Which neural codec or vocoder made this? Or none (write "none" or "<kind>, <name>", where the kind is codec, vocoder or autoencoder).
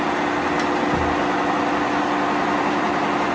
none